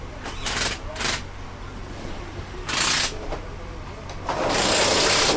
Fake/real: real